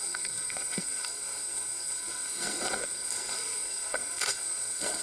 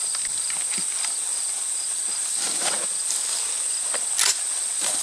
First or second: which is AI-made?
first